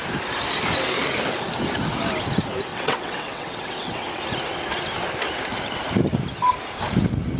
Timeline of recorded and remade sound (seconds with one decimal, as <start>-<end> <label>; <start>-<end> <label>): 0.0-2.7 recorded; 2.7-4.2 remade; 4.2-7.4 recorded